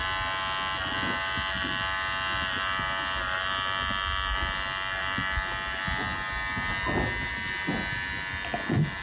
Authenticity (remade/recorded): recorded